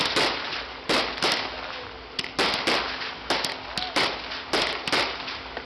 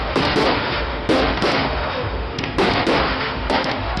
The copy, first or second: second